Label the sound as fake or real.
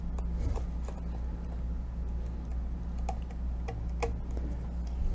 real